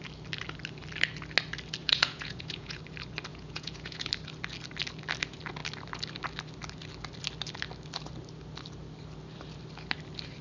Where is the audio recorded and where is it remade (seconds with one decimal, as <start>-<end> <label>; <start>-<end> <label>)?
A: 0.0-1.8 recorded; 1.8-2.8 remade; 2.8-3.3 recorded; 3.3-4.1 remade; 4.1-10.4 recorded